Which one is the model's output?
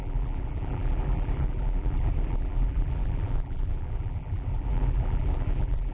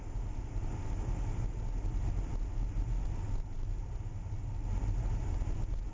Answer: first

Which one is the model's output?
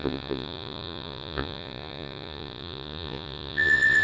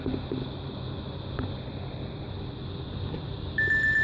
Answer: first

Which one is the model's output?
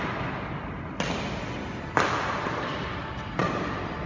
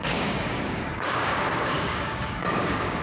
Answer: second